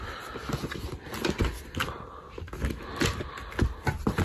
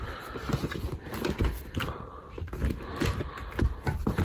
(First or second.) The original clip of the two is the first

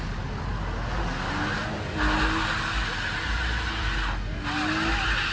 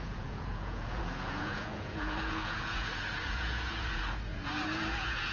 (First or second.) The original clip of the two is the first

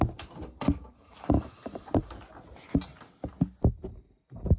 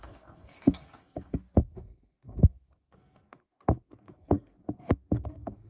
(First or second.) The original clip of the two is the first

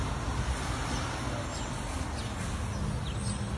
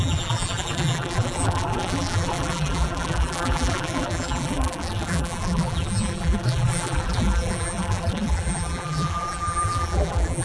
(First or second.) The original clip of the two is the first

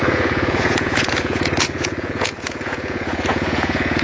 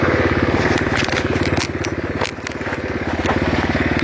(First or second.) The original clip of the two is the second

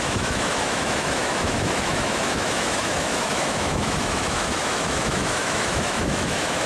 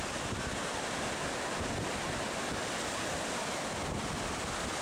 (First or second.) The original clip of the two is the second